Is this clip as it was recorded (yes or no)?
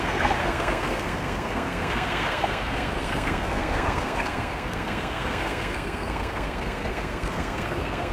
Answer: no